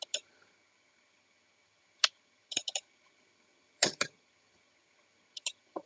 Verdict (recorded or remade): remade